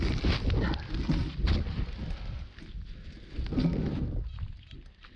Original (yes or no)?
yes